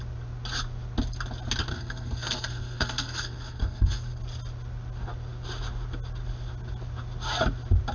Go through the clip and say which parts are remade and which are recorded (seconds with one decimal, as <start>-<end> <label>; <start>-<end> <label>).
0.0-1.7 recorded; 1.7-4.2 remade; 4.2-7.9 recorded